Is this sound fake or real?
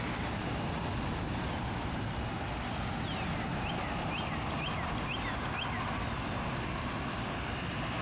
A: real